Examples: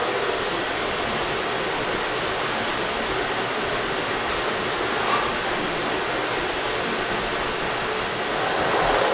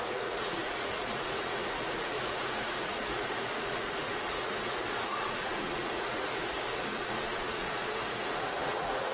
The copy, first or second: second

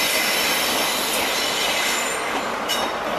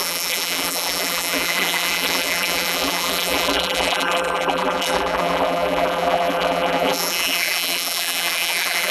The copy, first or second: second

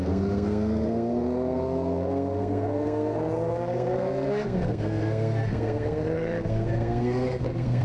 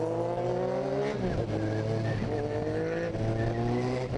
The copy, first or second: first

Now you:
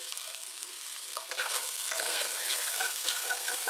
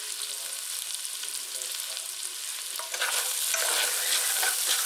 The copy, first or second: first